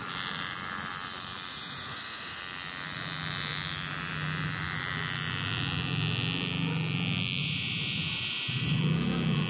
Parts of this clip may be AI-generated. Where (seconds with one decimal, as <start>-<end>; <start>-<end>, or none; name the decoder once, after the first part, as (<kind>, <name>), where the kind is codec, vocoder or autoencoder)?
1.5-2.4 (vocoder, Vocos); 7.4-8.8